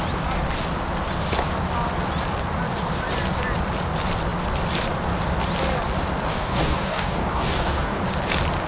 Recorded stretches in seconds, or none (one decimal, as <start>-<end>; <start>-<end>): 0.0-6.3; 8.0-8.7